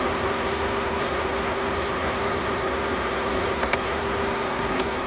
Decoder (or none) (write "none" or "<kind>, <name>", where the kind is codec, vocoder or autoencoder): codec, SNAC